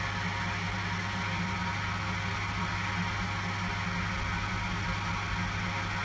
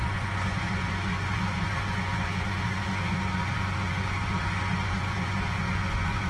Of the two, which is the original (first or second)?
first